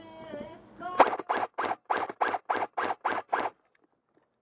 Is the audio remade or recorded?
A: recorded